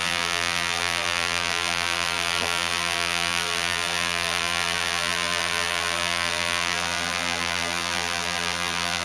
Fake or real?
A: fake